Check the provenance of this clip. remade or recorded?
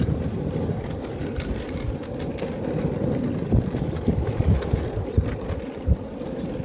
remade